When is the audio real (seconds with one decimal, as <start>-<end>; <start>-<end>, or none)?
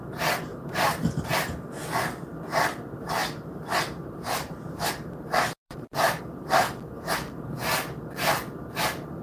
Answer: 0.0-0.5; 1.2-3.2; 6.2-9.2